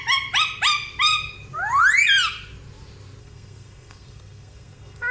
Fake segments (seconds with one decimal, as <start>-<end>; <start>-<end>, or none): 3.2-5.1